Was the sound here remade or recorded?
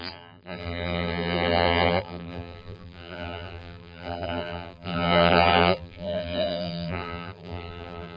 remade